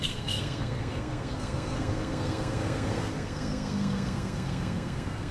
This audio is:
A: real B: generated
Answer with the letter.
B